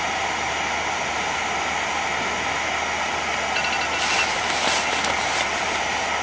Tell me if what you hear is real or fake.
real